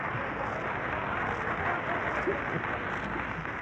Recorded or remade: recorded